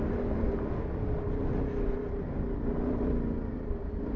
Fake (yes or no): no